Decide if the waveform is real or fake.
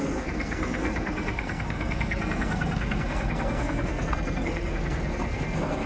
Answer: fake